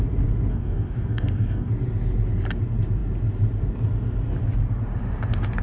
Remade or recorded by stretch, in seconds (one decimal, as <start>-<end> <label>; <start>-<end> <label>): 0.0-0.5 recorded; 0.5-1.7 remade; 1.7-5.6 recorded